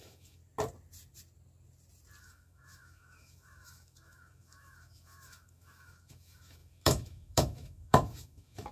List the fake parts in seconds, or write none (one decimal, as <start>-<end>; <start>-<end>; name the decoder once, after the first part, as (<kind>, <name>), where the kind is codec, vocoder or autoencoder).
0.0-0.4 (autoencoder, DAC-VAE); 2.2-8.7